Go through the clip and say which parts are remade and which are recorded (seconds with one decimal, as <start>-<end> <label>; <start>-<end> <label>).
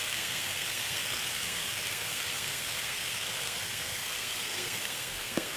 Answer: 0.0-5.6 remade